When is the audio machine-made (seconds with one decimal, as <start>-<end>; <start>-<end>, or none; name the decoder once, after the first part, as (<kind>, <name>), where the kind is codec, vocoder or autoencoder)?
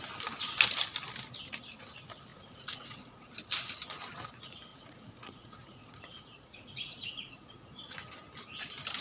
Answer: 2.3-3.3 (vocoder, Vocos); 4.7-8.1